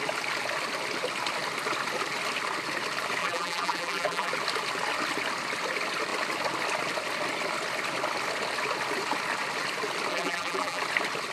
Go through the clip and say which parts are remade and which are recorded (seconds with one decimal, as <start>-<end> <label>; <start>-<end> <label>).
0.0-3.2 recorded; 3.2-4.3 remade; 4.3-10.1 recorded; 10.1-10.8 remade; 10.8-11.3 recorded